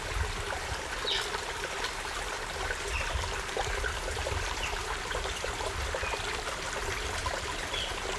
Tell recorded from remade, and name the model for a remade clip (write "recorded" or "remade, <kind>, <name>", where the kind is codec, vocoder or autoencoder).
recorded